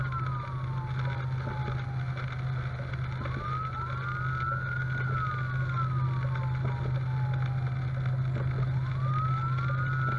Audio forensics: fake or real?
real